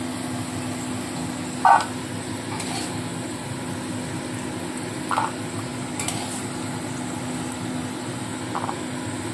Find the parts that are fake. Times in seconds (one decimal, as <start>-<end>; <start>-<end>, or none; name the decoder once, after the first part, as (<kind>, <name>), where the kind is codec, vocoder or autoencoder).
none